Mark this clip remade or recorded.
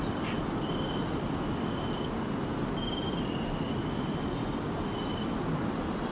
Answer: recorded